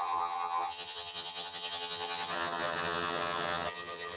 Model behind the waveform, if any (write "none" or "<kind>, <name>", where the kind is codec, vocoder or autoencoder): vocoder, HiFi-GAN